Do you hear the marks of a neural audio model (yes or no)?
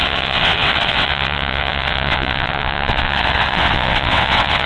yes